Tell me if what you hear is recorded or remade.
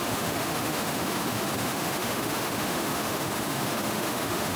remade